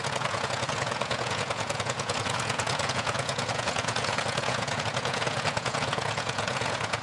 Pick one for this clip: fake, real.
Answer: fake